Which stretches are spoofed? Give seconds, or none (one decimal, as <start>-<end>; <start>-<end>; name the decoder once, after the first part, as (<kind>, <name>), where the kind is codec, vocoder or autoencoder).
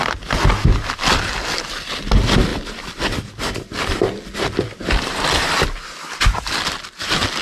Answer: 2.5-6.9 (vocoder, BigVGAN v2)